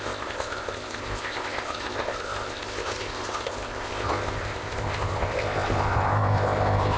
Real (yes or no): no